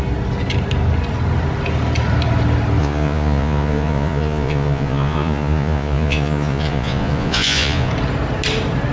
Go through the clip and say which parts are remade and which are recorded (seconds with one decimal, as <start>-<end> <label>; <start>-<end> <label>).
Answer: 0.0-2.8 recorded; 2.8-7.9 remade; 7.9-8.9 recorded